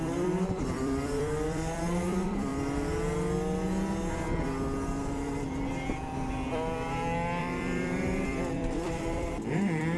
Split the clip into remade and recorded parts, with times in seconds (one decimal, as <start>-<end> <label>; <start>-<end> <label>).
0.0-2.5 remade; 2.5-7.4 recorded; 7.4-10.0 remade